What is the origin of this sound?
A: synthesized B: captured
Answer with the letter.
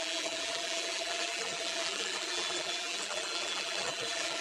A